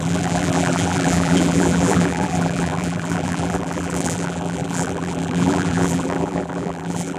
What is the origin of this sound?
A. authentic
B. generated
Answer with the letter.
B